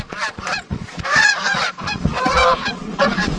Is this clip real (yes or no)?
no